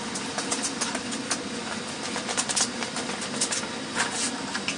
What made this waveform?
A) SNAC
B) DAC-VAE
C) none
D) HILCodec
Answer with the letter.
C